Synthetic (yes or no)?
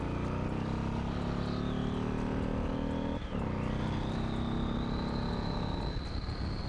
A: no